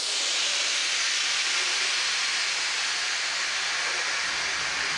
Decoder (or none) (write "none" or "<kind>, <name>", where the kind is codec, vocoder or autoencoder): none